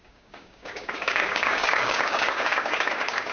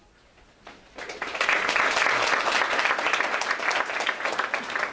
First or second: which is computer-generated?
first